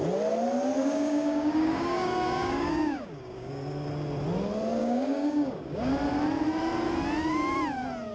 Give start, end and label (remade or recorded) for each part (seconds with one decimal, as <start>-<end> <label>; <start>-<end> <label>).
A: 0.0-0.8 recorded; 0.8-3.5 remade; 3.5-4.8 recorded; 4.8-5.9 remade; 5.9-8.1 recorded